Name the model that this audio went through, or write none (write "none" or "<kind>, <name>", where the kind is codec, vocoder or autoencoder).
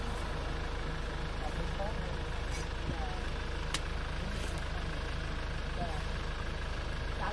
none